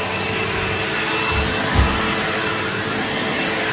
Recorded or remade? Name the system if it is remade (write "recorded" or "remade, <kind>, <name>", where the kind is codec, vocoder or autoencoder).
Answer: recorded